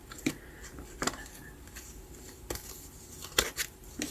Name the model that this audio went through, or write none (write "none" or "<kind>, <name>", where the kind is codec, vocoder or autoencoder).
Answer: none